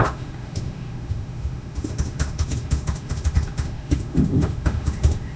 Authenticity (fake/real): fake